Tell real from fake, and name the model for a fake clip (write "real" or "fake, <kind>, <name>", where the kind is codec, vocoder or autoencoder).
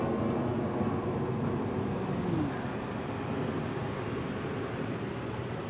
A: real